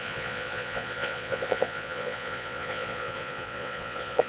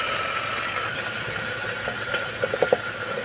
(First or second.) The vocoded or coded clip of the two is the first